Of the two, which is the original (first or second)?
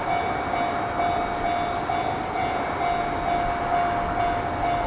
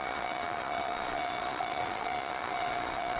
first